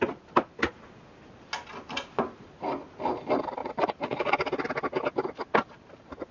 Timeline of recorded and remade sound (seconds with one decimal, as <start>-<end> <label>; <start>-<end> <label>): 0.0-3.6 recorded; 3.6-4.3 remade; 4.3-6.3 recorded